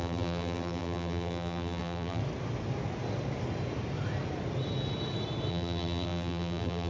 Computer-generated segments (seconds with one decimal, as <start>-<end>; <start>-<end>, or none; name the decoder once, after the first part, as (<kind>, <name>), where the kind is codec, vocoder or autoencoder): 0.0-2.2 (vocoder, BigVGAN v2); 5.5-6.9